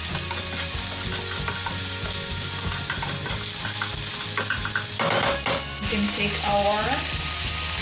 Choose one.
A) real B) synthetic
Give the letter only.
A